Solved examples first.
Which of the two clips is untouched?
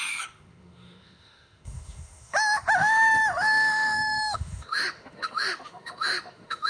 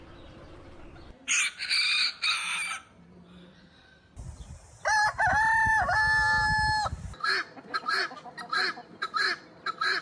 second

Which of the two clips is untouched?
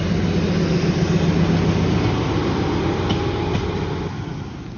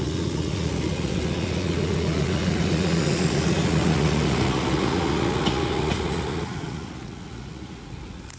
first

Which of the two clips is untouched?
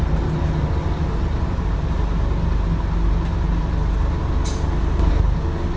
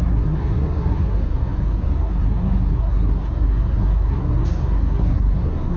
first